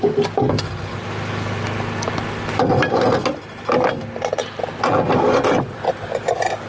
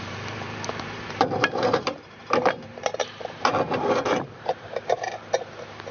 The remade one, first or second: second